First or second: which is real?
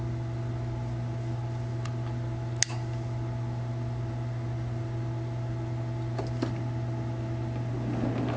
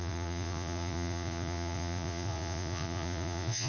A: first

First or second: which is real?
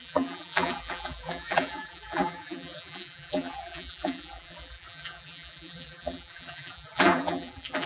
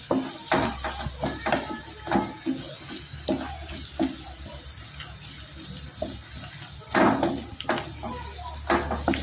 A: second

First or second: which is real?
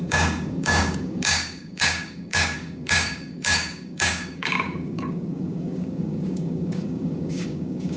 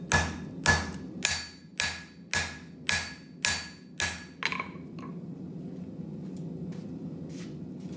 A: second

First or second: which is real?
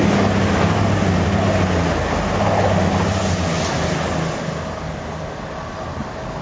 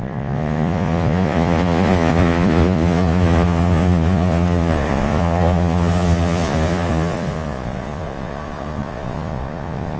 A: first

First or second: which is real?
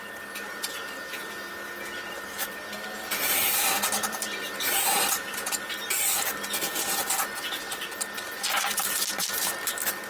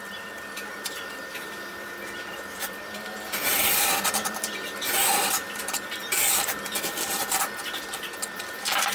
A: first